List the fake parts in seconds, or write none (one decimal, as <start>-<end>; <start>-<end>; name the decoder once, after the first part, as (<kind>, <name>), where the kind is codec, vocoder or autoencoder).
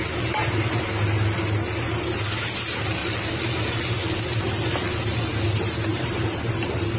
3.0-3.8 (vocoder, BigVGAN v2); 5.9-7.0